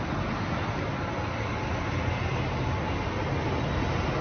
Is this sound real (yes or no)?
yes